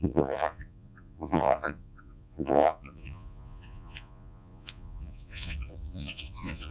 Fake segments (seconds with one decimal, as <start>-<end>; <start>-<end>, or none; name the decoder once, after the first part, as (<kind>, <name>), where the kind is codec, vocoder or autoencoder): 0.0-6.7 (vocoder, Vocos)